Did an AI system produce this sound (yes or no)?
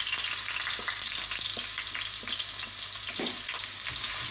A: no